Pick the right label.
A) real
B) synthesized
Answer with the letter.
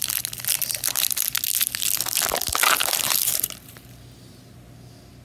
A